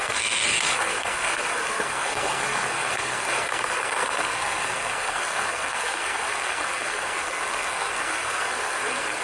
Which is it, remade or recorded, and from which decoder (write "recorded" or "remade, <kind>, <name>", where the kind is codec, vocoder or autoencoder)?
remade, codec, SNAC